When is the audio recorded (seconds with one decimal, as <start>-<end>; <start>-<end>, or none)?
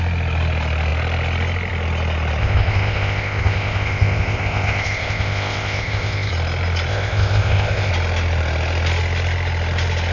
0.0-2.4; 6.3-6.9; 7.9-10.1